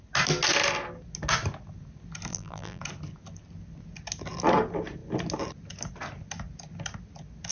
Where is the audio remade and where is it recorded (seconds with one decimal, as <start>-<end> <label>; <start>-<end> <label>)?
0.0-2.3 recorded; 2.3-2.8 remade; 2.8-7.5 recorded

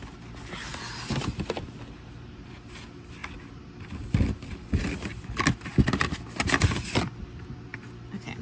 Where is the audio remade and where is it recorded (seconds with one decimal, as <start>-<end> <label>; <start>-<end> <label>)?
0.0-8.4 recorded

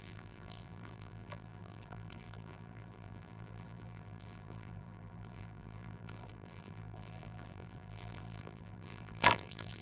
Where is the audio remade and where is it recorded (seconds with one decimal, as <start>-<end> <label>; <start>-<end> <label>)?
0.0-9.8 remade

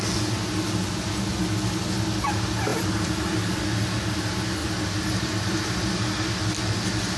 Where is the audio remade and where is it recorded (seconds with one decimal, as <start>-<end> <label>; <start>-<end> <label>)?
0.0-2.7 recorded; 2.7-3.3 remade; 3.3-4.6 recorded; 4.6-5.5 remade; 5.5-7.2 recorded

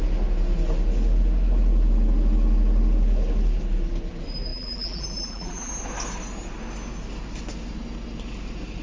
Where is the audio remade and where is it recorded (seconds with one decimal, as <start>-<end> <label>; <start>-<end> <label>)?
0.0-4.5 recorded; 4.5-5.7 remade; 5.7-8.8 recorded

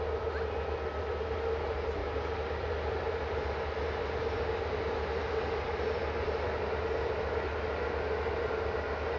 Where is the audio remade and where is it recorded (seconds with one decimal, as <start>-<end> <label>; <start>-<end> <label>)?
0.0-2.0 recorded; 2.0-3.5 remade; 3.5-9.2 recorded

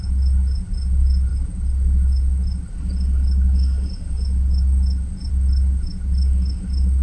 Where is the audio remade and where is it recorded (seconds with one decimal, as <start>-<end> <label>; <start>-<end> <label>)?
0.0-7.0 recorded